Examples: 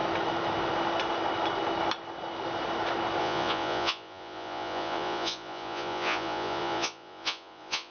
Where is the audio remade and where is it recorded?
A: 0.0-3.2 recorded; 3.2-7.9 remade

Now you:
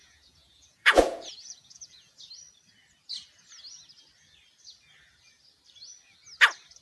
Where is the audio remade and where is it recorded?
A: 0.0-2.3 remade; 2.3-6.8 recorded

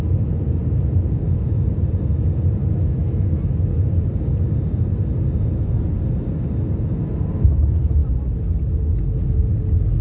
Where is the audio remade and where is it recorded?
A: 0.0-10.0 recorded

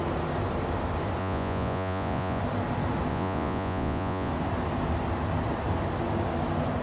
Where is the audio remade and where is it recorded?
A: 0.0-1.2 recorded; 1.2-2.4 remade; 2.4-3.1 recorded; 3.1-4.3 remade; 4.3-6.8 recorded

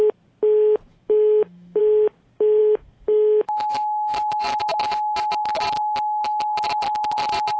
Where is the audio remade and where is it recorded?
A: 0.0-0.9 recorded; 0.9-1.8 remade; 1.8-2.6 recorded; 2.6-4.6 remade; 4.6-7.6 recorded

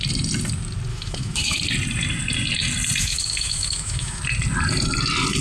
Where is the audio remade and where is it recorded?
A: 0.0-0.9 recorded; 0.9-1.6 remade; 1.6-3.0 recorded; 3.0-4.2 remade; 4.2-5.4 recorded

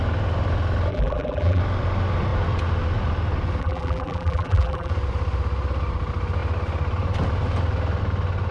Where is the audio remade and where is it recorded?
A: 0.0-0.9 recorded; 0.9-1.6 remade; 1.6-3.6 recorded; 3.6-4.9 remade; 4.9-8.5 recorded

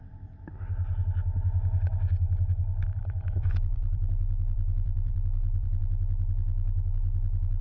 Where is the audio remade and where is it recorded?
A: 0.0-3.0 recorded; 3.0-5.8 remade; 5.8-7.6 recorded